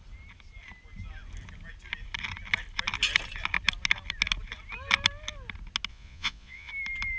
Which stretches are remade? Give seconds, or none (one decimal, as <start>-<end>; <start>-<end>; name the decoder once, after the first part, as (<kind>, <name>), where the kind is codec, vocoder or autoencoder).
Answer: 5.9-6.7 (vocoder, Vocos)